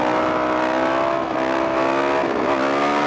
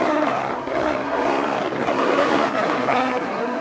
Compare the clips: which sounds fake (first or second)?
second